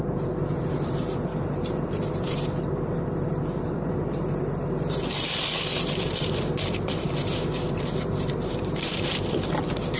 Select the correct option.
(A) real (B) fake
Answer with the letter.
B